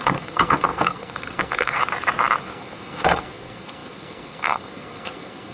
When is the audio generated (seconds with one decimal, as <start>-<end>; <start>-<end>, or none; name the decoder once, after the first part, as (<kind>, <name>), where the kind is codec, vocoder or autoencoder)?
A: 0.0-1.8 (codec, SNAC); 2.4-5.5